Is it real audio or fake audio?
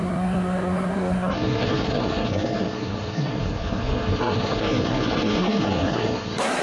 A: fake